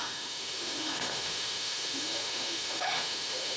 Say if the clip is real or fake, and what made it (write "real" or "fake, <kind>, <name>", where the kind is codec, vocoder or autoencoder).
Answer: fake, autoencoder, DAC-VAE